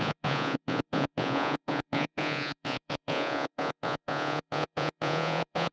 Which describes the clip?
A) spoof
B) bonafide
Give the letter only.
A